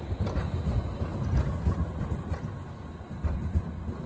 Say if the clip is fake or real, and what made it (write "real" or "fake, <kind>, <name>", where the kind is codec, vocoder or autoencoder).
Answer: real